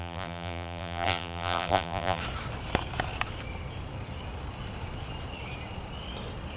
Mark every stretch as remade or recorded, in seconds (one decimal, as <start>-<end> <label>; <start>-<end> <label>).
0.0-2.2 remade; 2.2-6.6 recorded